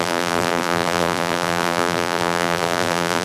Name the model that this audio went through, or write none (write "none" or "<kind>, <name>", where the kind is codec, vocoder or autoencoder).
vocoder, BigVGAN v2